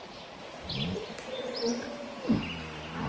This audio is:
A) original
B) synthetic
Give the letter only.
A